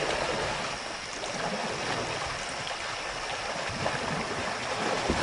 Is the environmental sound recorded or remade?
recorded